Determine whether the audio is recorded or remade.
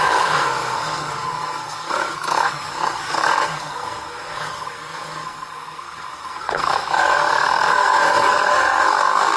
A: remade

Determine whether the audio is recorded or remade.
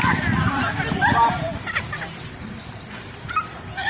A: remade